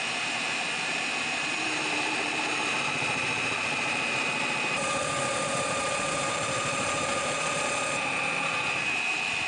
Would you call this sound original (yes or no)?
no